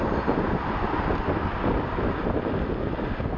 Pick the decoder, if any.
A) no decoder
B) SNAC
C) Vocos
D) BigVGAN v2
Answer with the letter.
A